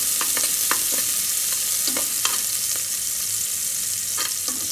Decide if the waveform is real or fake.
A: real